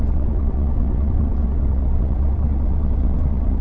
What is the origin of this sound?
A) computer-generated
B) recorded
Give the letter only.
A